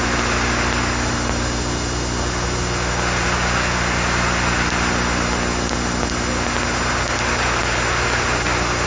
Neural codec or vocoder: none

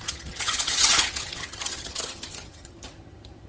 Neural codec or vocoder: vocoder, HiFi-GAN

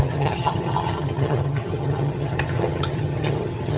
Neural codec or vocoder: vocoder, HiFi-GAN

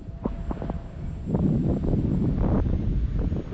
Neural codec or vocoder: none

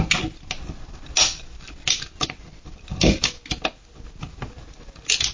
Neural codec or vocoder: none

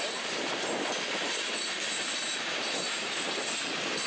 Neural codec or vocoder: none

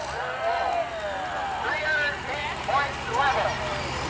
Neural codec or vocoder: none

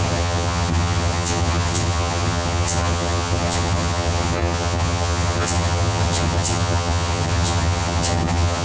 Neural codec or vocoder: vocoder, HiFi-GAN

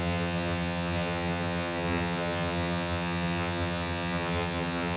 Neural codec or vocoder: vocoder, HiFi-GAN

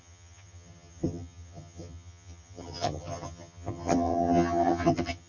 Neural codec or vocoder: vocoder, HiFi-GAN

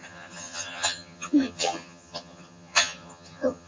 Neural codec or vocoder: vocoder, HiFi-GAN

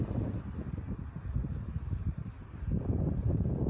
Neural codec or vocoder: none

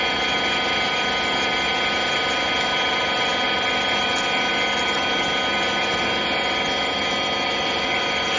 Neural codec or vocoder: none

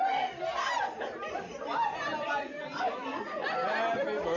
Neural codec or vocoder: none